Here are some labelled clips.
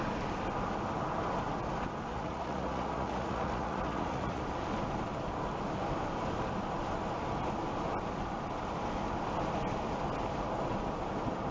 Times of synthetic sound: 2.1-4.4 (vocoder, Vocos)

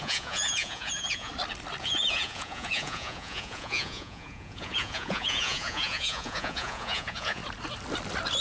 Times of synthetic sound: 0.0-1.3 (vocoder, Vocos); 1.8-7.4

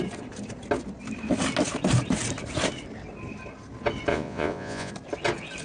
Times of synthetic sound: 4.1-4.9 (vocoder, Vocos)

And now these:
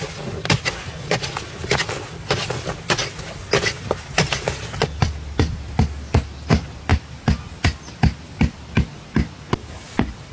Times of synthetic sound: none